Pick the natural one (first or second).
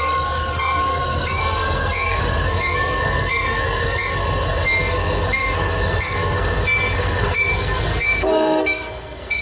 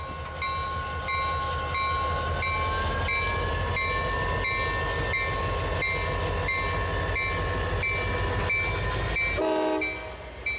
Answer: second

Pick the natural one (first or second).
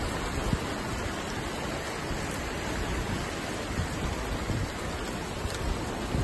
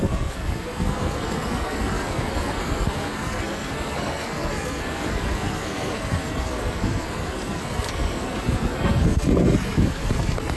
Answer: first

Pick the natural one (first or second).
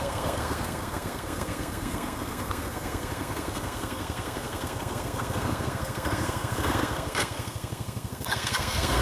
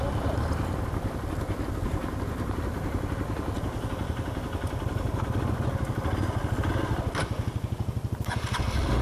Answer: second